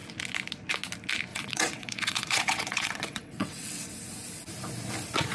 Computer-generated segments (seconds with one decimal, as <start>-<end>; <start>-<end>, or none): 1.3-3.9